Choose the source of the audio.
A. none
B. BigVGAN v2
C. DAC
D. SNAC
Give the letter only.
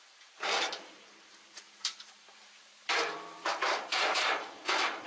B